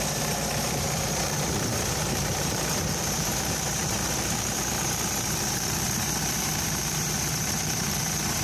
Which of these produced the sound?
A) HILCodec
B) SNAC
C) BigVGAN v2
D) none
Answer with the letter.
C